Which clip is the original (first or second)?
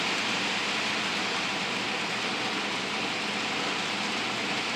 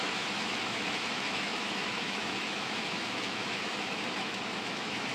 first